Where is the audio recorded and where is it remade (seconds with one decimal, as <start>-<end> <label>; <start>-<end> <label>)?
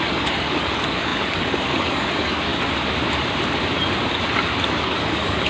0.0-2.5 remade; 2.5-4.6 recorded; 4.6-5.5 remade